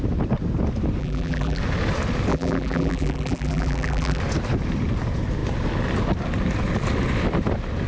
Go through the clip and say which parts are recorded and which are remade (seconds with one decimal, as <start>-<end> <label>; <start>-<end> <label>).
0.0-1.0 recorded; 1.0-1.6 remade; 1.6-2.3 recorded; 2.3-4.2 remade; 4.2-7.9 recorded